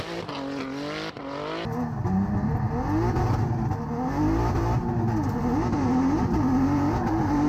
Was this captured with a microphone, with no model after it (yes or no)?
yes